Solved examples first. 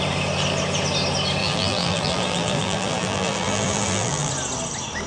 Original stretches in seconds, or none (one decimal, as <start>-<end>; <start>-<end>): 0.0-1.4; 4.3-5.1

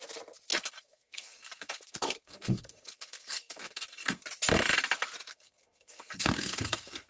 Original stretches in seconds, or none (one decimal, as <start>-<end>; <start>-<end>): 0.0-0.5; 4.2-5.3

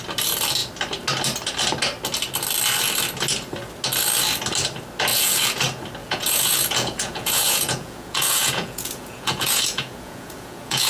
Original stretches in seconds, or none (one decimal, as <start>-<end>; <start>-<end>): 0.0-5.1; 5.6-6.0